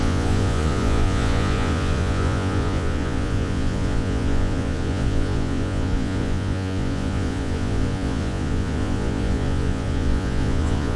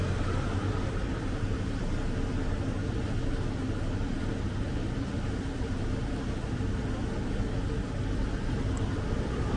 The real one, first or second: second